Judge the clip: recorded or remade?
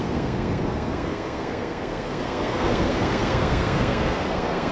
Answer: remade